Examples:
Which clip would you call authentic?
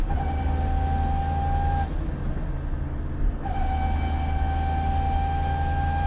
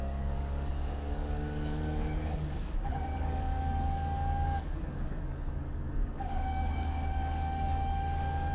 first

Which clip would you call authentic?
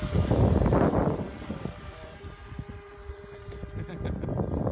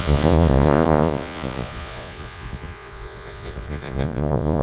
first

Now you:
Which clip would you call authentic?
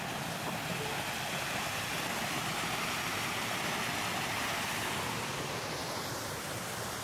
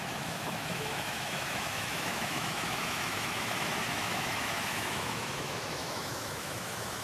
first